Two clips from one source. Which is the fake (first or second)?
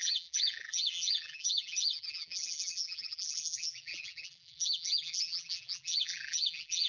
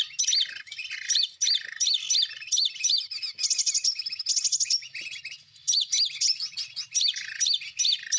first